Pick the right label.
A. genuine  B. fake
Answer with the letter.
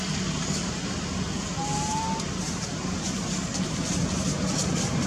A